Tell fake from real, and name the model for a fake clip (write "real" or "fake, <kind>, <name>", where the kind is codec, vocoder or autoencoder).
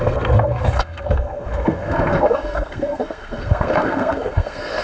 fake, codec, SNAC